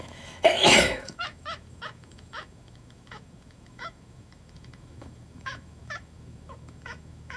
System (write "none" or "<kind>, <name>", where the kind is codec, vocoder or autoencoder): autoencoder, DAC-VAE